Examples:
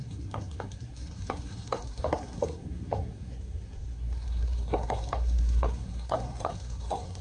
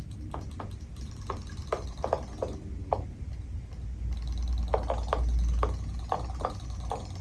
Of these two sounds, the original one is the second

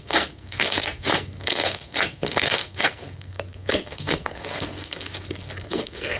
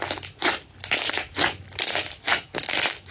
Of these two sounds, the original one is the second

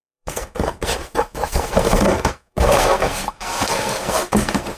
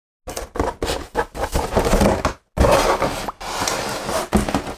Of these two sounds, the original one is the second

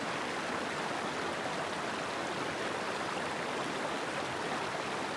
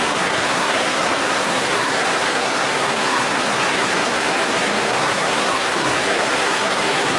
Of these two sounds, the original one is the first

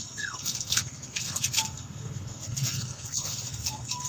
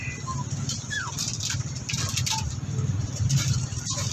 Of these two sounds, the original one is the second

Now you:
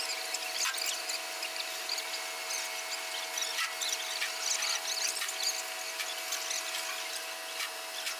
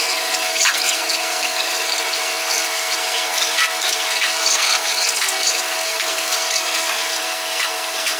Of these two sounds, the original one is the first